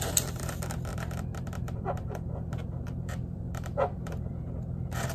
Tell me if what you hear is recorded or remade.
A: remade